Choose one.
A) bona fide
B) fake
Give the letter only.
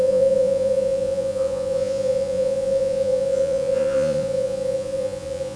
B